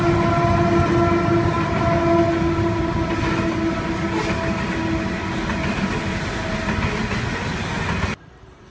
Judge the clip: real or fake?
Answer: real